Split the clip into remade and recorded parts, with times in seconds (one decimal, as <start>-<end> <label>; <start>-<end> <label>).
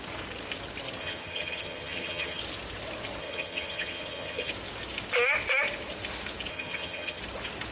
0.0-1.0 recorded; 1.0-2.4 remade; 2.4-3.2 recorded; 3.2-4.5 remade; 4.5-6.5 recorded; 6.5-7.2 remade; 7.2-7.7 recorded